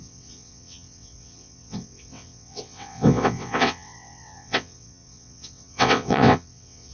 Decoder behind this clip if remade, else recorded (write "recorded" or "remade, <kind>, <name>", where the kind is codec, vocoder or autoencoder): remade, vocoder, WaveNeXt